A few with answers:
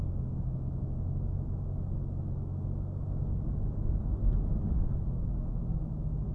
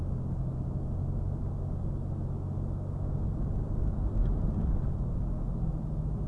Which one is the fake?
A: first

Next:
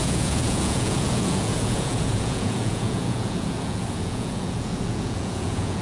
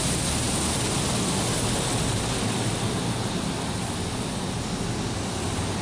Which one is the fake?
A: first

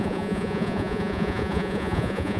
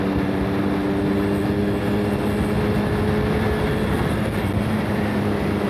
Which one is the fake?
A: first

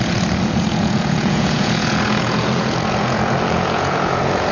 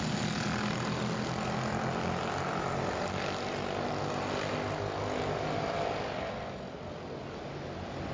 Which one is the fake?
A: first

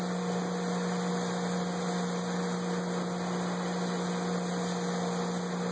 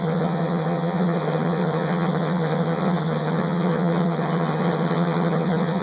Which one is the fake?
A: second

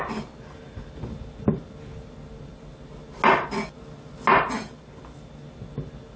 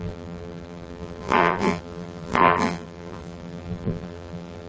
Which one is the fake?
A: second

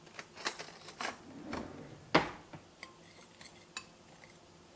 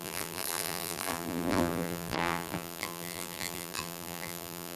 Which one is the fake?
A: second